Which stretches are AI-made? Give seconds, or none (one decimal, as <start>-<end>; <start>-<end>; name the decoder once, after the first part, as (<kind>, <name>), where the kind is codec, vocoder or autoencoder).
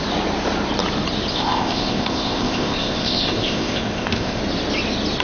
1.3-4.4 (codec, ZipCodec)